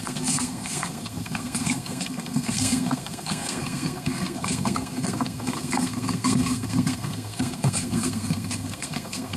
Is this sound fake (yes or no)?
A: yes